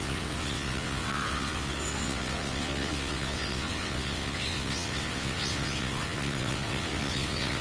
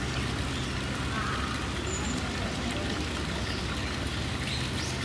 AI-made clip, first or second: first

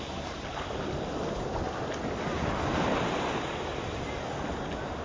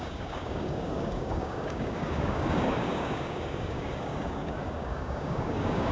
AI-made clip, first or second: second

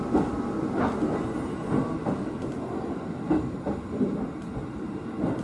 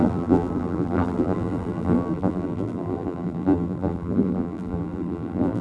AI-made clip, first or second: second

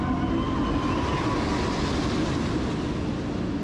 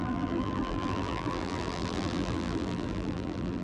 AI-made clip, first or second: second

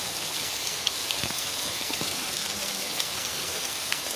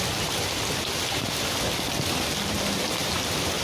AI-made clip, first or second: first